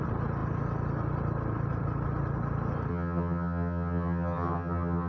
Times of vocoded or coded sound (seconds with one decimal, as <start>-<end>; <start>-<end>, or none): 2.9-5.1